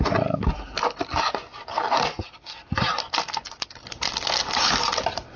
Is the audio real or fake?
real